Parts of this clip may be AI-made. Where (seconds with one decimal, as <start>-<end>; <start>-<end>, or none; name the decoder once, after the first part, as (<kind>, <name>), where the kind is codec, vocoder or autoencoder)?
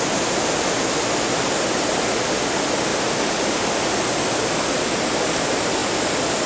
5.8-6.5 (vocoder, BigVGAN v2)